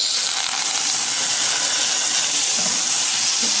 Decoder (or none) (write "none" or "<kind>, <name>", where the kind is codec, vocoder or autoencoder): none